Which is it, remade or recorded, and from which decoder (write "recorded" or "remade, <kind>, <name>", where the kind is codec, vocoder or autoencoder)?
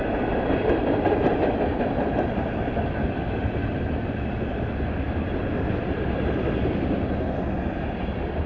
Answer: recorded